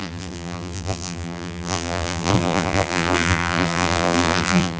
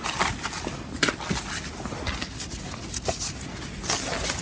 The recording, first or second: second